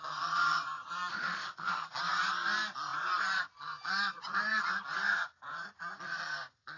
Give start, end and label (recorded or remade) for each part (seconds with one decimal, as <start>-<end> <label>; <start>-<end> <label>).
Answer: 0.0-1.1 recorded; 1.1-1.8 remade; 1.8-6.8 recorded